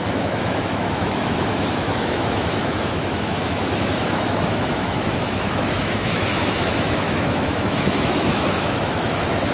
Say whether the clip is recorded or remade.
remade